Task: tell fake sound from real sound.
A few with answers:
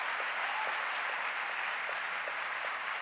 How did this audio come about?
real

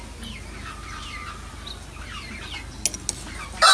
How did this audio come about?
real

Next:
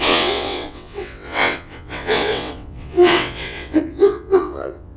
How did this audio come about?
fake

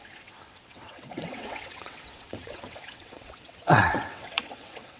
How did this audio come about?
fake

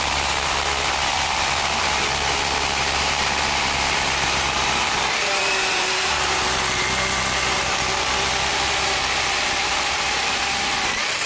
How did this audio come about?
fake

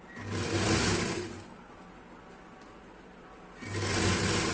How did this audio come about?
real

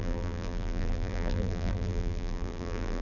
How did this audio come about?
fake